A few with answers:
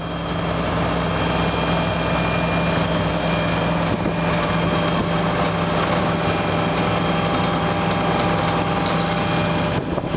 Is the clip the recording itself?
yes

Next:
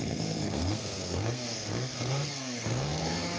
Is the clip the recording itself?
no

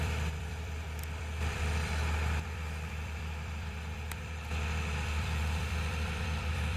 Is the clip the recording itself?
no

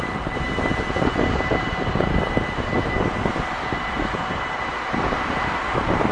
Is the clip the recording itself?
yes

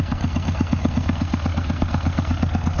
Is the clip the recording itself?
no